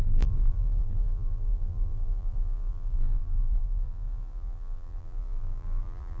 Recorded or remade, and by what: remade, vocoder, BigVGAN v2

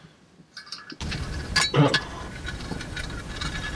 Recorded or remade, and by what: recorded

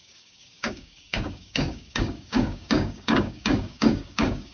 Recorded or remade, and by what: remade, codec, DAC